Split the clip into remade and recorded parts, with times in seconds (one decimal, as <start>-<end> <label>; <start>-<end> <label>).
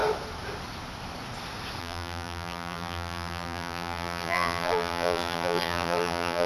0.0-1.8 recorded; 1.8-6.5 remade